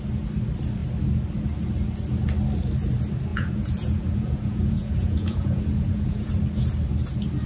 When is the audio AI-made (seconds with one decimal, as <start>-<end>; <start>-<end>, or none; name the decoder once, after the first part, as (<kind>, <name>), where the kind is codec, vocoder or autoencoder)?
3.3-6.3 (vocoder, Vocos)